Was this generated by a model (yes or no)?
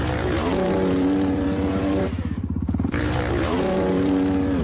yes